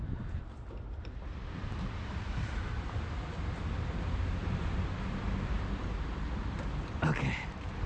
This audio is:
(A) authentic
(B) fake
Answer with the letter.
B